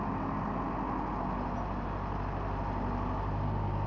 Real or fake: real